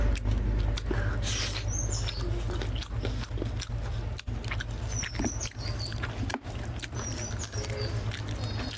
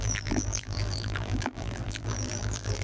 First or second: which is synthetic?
second